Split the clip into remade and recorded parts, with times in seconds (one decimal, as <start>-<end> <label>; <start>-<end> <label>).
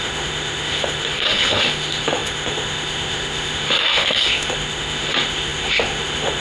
0.0-6.4 remade